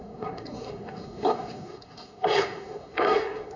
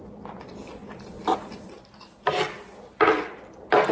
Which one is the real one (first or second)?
second